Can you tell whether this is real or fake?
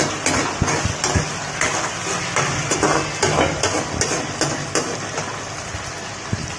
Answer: real